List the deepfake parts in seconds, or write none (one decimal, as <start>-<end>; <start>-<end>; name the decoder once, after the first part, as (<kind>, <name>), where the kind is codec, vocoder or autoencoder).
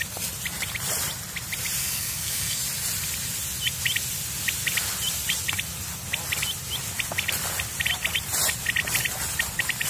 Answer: 1.8-2.6 (codec, SNAC)